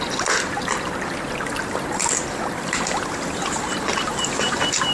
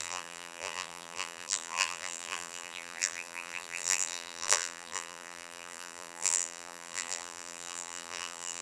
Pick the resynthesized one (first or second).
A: second